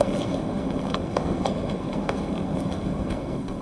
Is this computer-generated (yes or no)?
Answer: yes